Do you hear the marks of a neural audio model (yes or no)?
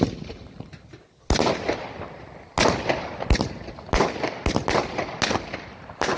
no